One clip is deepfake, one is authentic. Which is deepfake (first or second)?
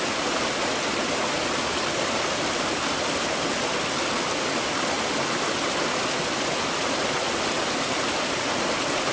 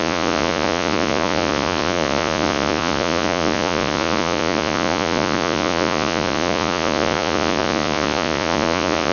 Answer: second